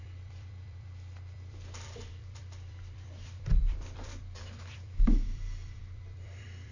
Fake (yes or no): yes